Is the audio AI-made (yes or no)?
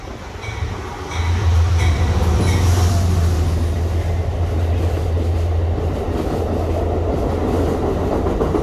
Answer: no